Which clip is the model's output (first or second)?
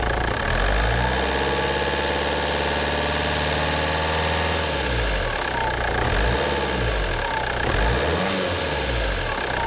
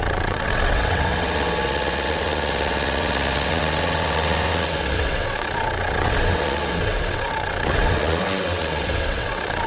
second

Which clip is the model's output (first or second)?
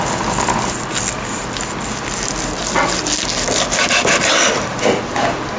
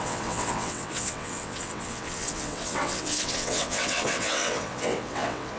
second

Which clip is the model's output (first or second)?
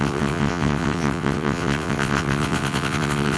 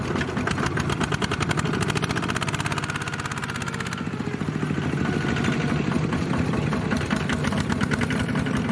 first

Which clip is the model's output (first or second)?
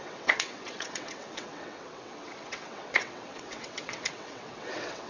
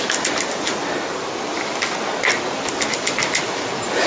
first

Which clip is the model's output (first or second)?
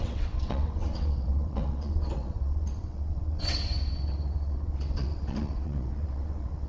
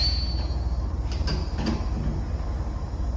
first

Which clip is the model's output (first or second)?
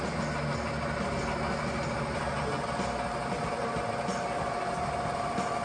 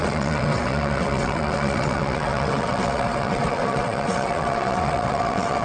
second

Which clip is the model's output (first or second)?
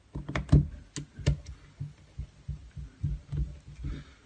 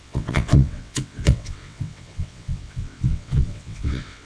second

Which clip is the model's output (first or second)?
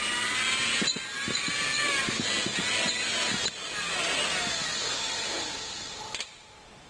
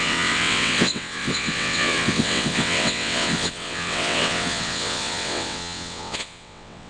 second